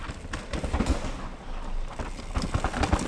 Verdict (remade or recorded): recorded